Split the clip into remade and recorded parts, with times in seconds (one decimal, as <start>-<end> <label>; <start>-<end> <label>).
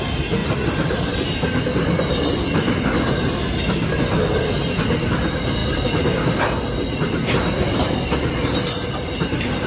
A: 0.0-0.4 recorded; 0.4-1.2 remade; 1.2-9.7 recorded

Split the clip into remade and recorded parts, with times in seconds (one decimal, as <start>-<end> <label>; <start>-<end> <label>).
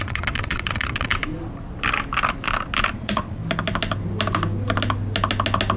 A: 0.0-1.1 remade; 1.1-2.9 recorded; 2.9-3.4 remade; 3.4-5.8 recorded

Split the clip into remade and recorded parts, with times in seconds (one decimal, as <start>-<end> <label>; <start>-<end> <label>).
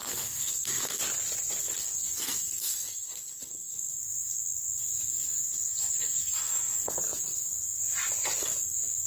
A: 0.0-1.0 remade; 1.0-1.6 recorded; 1.6-7.8 remade; 7.8-8.4 recorded; 8.4-9.1 remade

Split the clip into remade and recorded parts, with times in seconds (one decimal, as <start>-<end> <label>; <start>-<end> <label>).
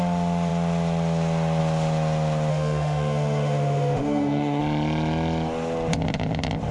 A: 0.0-2.5 recorded; 2.5-4.6 remade; 4.6-6.7 recorded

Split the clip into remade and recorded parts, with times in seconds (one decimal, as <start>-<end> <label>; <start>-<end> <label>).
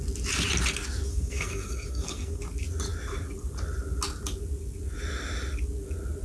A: 0.0-1.1 recorded; 1.1-2.4 remade; 2.4-6.2 recorded